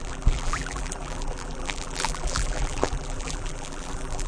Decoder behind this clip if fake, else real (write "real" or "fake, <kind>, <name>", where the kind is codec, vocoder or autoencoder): fake, vocoder, BigVGAN v2